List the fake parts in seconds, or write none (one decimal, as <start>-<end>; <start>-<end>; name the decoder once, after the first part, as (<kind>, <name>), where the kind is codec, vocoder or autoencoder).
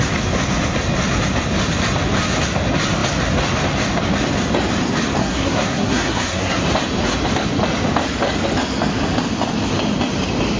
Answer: 5.2-6.6 (codec, SNAC)